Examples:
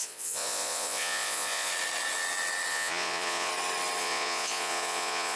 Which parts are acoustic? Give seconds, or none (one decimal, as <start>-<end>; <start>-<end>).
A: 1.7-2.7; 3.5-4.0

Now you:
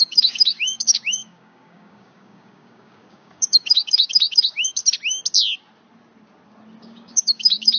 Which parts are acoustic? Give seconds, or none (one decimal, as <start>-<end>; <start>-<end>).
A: 4.8-6.8

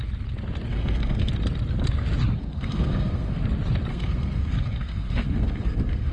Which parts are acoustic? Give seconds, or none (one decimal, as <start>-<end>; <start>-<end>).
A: 0.0-0.7; 1.3-2.4; 3.4-3.9

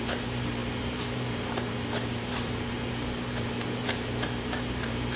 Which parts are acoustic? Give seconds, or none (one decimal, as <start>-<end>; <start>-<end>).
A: none

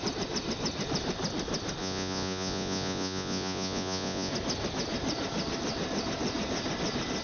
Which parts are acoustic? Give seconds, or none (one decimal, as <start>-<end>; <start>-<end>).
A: 0.0-1.8; 4.3-7.2

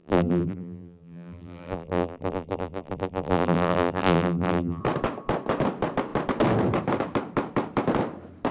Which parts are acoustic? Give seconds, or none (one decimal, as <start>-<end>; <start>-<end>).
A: 4.8-8.5